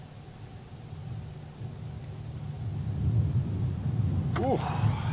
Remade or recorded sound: recorded